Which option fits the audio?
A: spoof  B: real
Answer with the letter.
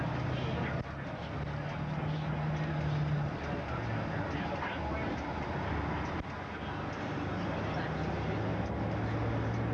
B